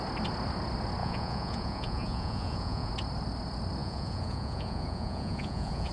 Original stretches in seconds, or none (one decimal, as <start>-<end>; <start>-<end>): 0.0-1.0; 2.9-3.8